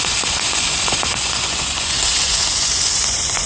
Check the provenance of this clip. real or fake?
fake